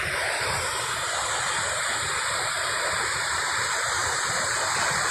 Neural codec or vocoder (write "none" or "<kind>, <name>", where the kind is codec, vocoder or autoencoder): vocoder, BigVGAN v2